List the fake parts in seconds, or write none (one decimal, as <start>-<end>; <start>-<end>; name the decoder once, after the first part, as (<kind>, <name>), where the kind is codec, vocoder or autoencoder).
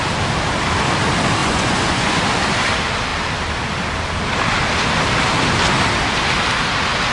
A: 1.4-2.2 (vocoder, Vocos)